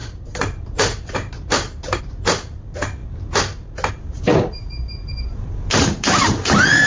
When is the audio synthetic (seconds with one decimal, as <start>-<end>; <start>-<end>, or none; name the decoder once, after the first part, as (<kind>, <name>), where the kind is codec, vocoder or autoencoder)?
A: 0.0-3.0 (vocoder, BigVGAN v2); 3.9-6.9